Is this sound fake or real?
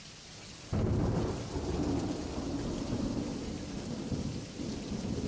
real